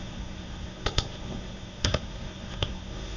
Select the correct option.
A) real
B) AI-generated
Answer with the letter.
B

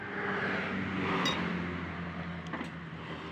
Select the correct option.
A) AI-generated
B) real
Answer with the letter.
B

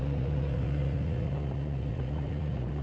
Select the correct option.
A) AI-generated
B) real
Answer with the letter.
A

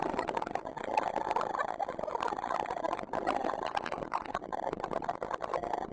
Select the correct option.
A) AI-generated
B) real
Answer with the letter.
B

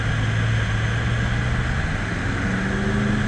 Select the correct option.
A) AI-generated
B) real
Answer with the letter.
B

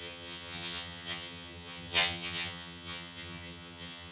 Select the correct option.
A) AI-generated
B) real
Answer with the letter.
A